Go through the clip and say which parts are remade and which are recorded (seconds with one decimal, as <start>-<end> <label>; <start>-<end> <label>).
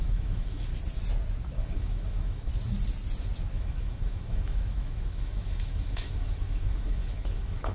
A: 0.0-0.7 remade; 0.7-1.5 recorded; 1.5-2.5 remade; 2.5-3.5 recorded; 3.5-7.7 remade